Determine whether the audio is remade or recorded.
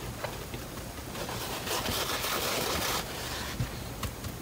recorded